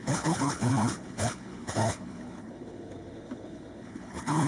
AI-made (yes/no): yes